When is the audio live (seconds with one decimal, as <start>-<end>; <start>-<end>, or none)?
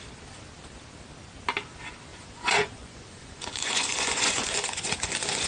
0.0-2.1